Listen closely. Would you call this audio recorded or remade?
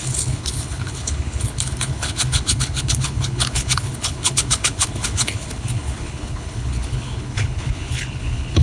remade